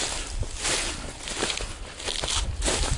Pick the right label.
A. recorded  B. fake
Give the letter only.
A